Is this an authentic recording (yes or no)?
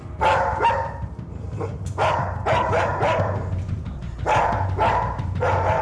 no